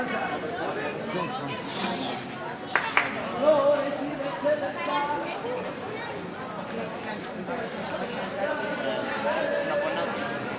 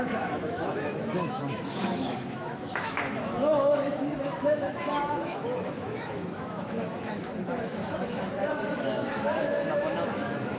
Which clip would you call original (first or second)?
first